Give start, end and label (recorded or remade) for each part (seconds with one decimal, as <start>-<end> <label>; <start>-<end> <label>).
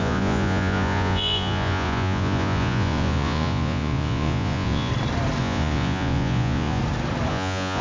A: 0.0-4.9 remade; 4.9-5.4 recorded; 5.4-6.8 remade; 6.8-7.3 recorded; 7.3-7.8 remade